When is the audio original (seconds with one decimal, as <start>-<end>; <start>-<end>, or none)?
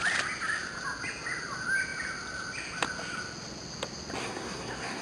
0.0-4.2